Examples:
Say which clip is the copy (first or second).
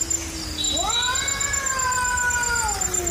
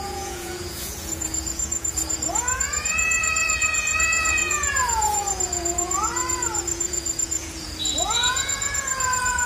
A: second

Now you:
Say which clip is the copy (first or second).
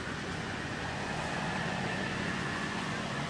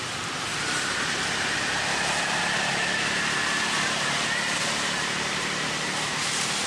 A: first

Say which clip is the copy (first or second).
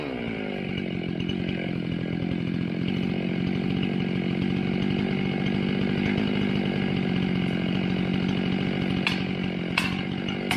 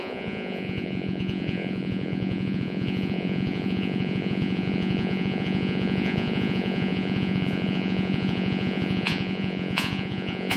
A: second